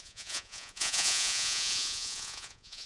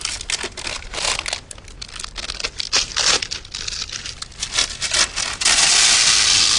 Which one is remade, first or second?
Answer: first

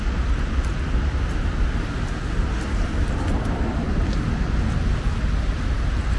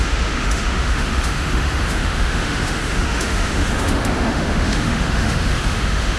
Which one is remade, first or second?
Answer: second